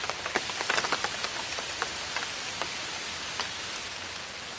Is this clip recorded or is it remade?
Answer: recorded